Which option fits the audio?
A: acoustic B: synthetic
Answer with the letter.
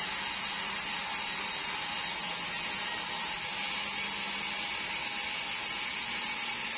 A